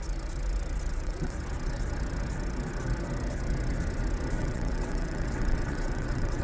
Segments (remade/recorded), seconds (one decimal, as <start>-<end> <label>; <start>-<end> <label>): 0.0-0.9 recorded; 0.9-1.5 remade; 1.5-4.4 recorded; 4.4-6.4 remade